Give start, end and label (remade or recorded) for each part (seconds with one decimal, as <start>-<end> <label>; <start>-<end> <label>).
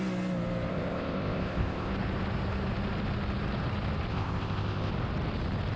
0.0-0.7 recorded; 0.7-1.9 remade; 1.9-4.1 recorded; 4.1-4.9 remade; 4.9-5.8 recorded